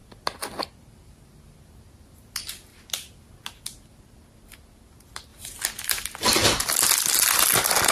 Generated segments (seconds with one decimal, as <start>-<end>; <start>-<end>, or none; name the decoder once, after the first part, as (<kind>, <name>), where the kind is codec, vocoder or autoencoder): 2.7-3.2 (vocoder, BigVGAN v2)